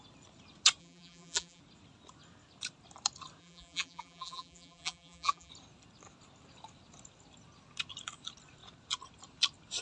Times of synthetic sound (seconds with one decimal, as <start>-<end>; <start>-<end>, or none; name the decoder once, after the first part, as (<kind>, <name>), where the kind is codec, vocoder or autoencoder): 0.8-1.6 (vocoder, BigVGAN v2); 3.4-5.5

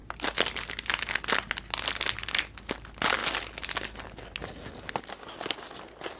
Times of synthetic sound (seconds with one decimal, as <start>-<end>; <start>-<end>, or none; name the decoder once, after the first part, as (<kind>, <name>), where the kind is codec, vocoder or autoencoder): none

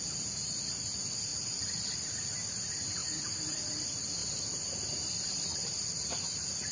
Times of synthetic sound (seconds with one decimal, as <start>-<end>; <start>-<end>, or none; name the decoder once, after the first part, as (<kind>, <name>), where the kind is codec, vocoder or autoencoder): 1.3-1.9 (vocoder, BigVGAN v2); 4.2-5.0